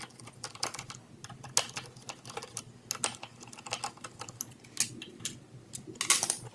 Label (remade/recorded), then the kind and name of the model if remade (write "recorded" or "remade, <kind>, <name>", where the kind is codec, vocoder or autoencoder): recorded